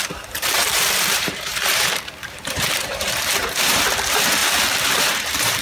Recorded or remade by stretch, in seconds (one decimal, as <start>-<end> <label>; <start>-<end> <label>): 0.0-4.4 remade; 4.4-5.0 recorded; 5.0-5.6 remade